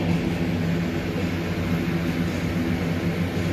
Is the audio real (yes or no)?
yes